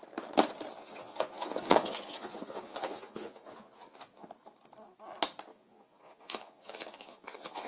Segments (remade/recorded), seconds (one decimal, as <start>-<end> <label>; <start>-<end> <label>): 0.0-0.8 recorded; 0.8-4.3 remade; 4.3-5.5 recorded; 5.5-7.7 remade